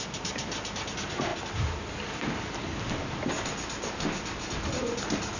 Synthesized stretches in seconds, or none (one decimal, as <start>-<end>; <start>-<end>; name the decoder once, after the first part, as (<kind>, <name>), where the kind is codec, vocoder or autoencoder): none